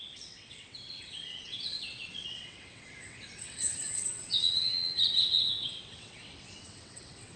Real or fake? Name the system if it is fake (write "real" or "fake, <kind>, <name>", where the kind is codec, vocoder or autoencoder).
fake, vocoder, WaveNeXt